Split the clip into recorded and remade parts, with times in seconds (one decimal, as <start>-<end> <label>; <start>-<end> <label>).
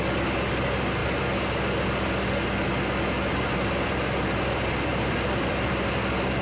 0.0-4.9 recorded; 4.9-5.7 remade; 5.7-6.4 recorded